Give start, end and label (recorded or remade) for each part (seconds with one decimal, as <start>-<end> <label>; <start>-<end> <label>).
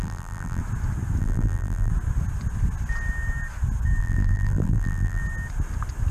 0.0-0.6 remade; 0.6-1.2 recorded; 1.2-1.9 remade; 1.9-4.0 recorded; 4.0-5.2 remade; 5.2-6.1 recorded